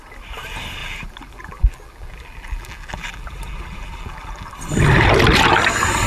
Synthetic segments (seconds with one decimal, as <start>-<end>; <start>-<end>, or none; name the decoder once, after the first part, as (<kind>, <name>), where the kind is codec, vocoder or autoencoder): 0.8-4.5 (vocoder, BigVGAN v2)